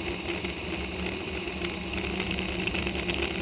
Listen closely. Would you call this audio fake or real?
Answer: real